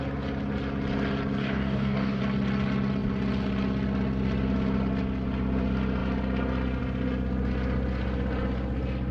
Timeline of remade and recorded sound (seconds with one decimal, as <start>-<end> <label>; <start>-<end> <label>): 0.0-1.4 recorded; 1.4-2.2 remade; 2.2-9.1 recorded